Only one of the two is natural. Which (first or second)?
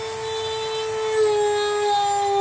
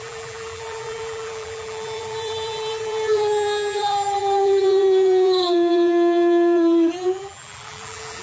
first